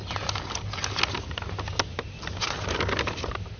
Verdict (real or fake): real